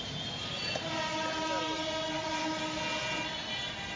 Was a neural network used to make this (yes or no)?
no